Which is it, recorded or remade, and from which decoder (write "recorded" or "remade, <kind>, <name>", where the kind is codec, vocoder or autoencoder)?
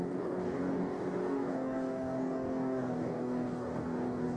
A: remade, codec, DAC